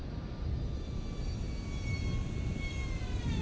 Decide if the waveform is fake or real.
real